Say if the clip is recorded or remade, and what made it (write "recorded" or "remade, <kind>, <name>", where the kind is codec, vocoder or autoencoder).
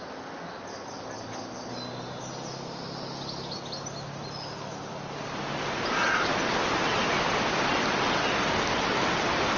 recorded